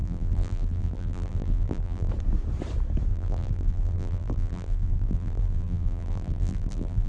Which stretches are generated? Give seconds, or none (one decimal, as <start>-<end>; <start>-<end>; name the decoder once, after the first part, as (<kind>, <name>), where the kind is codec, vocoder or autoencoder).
0.0-2.1 (vocoder, BigVGAN v2); 3.1-7.1